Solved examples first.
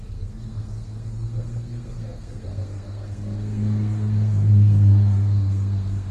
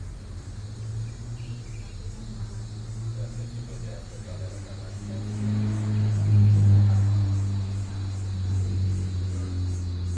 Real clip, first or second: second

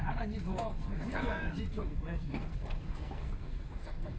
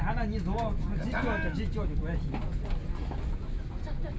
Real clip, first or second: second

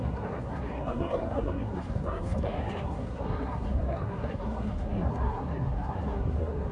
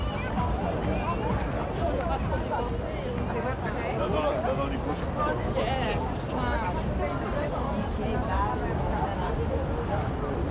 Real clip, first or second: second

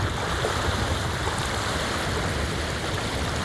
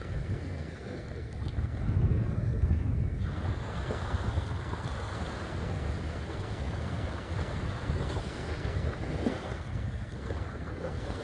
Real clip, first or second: first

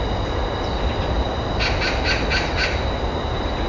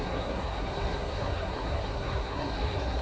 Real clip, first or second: first